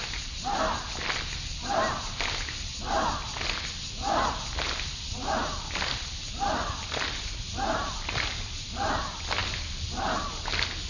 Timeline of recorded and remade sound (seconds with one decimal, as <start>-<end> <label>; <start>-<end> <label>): 0.0-10.9 recorded